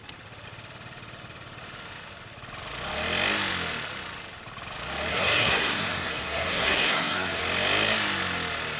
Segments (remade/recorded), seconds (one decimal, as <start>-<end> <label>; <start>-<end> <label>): 0.0-5.1 recorded; 5.1-7.4 remade; 7.4-8.8 recorded